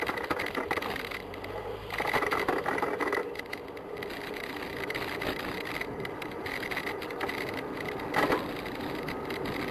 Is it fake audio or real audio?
real